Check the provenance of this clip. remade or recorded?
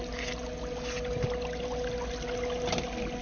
recorded